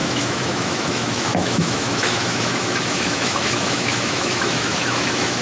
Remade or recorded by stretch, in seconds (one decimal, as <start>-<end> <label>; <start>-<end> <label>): 0.0-5.4 remade